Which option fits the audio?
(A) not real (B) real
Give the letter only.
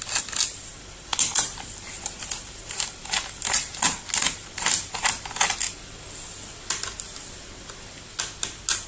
B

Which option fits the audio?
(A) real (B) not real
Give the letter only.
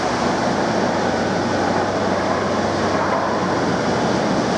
A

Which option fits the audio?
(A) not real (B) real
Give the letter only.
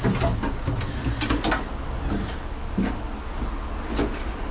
B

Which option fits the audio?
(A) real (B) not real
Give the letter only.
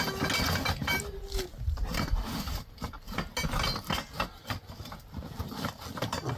A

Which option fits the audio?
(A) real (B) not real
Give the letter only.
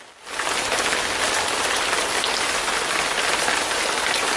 A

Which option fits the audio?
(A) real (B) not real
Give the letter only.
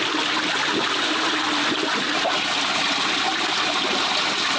A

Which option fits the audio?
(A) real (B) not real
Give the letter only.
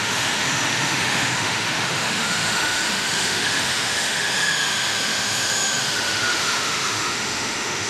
B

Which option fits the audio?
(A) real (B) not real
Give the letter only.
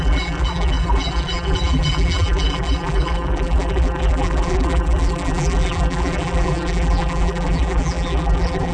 B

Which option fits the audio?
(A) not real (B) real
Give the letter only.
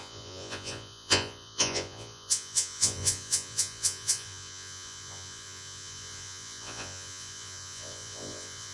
A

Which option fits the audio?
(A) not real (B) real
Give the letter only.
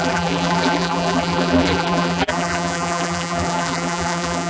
A